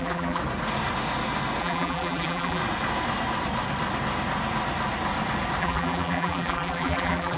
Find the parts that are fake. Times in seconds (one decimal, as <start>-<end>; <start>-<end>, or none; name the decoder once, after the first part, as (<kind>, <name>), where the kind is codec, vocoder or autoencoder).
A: 0.0-0.4 (vocoder, BigVGAN v2); 1.6-2.6; 5.6-7.4